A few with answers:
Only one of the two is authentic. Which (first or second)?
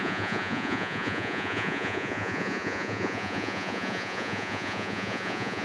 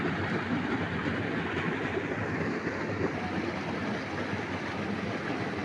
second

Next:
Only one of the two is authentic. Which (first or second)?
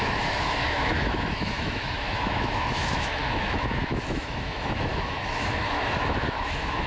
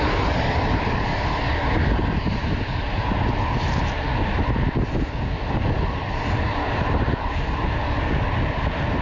second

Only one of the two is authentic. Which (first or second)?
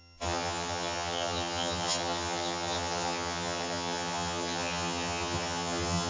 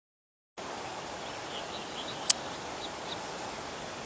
second